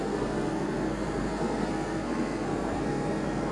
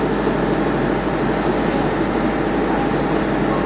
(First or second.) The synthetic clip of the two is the first